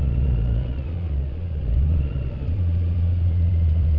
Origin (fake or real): fake